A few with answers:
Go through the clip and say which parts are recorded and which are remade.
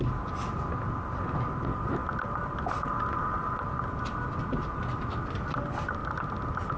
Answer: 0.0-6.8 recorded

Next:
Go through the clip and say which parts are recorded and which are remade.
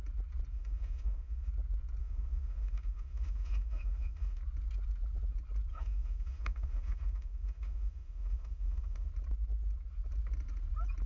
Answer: 0.0-0.5 recorded; 0.5-1.5 remade; 1.5-2.0 recorded; 2.0-4.4 remade; 4.4-5.7 recorded; 5.7-9.1 remade; 9.1-11.1 recorded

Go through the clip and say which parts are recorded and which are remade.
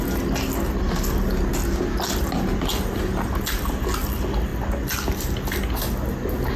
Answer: 0.0-6.6 recorded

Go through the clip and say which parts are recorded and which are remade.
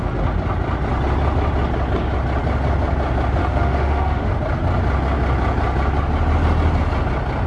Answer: 0.0-3.4 recorded; 3.4-4.3 remade; 4.3-7.5 recorded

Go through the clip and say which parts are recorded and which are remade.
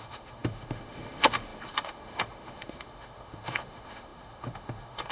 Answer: 0.0-5.1 remade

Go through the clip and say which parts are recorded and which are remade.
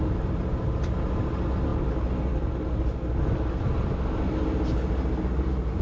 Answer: 0.0-5.8 recorded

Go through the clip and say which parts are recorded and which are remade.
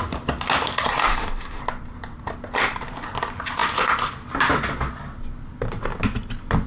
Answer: 0.0-1.1 recorded; 1.1-1.6 remade; 1.6-6.7 recorded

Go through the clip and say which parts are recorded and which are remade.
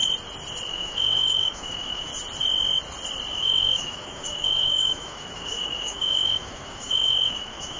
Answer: 0.0-0.7 recorded; 0.7-2.1 remade; 2.1-3.3 recorded; 3.3-7.8 remade